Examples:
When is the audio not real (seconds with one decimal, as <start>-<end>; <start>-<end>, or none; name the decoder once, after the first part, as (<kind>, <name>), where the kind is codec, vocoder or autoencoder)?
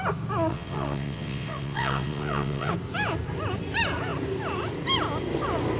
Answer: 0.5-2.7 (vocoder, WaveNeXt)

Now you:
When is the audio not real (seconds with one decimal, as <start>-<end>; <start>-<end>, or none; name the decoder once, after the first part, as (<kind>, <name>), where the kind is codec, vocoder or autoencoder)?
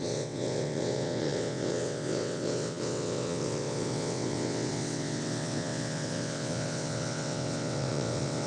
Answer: 0.0-8.5 (vocoder, WaveNeXt)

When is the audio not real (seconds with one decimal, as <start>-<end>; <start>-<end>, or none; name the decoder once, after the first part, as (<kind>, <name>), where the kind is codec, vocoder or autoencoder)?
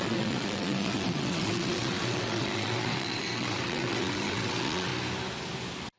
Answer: 0.0-4.9 (vocoder, WaveNeXt)